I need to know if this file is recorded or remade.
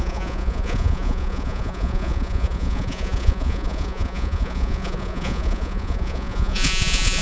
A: remade